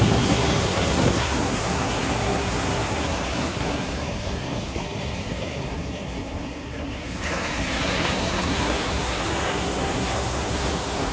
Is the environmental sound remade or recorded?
remade